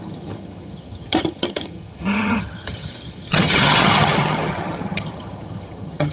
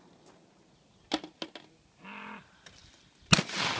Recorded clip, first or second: second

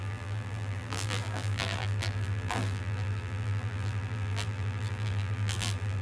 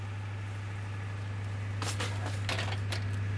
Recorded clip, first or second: second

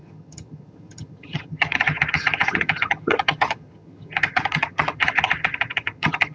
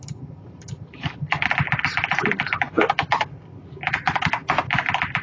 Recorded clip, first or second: second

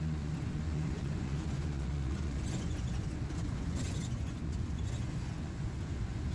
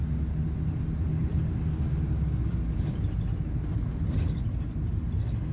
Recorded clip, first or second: second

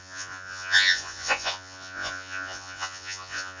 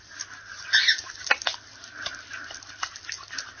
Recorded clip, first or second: second